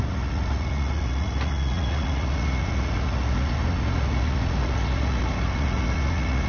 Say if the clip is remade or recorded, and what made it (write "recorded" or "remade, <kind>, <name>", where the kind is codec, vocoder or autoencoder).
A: remade, vocoder, Vocos